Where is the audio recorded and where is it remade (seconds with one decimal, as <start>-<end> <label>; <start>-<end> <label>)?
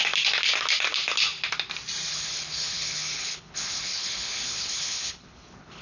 0.0-2.1 recorded; 2.1-5.8 remade